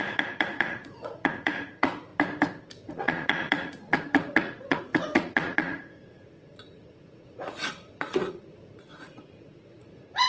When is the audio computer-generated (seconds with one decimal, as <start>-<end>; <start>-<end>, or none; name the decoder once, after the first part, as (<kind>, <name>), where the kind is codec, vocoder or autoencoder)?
0.0-2.1 (vocoder, Vocos); 2.9-10.3